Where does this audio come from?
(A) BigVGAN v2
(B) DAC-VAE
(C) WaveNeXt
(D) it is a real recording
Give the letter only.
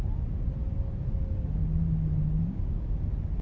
D